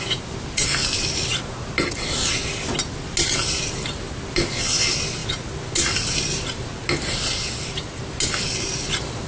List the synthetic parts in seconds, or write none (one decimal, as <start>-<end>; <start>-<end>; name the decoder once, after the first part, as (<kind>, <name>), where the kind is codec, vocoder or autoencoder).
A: none